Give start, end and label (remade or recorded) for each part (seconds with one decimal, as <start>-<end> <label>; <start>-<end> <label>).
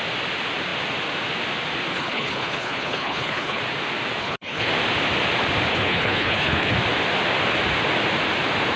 0.0-1.9 recorded; 1.9-3.6 remade; 3.6-4.2 recorded; 4.2-4.7 remade; 4.7-5.7 recorded; 5.7-6.7 remade; 6.7-8.8 recorded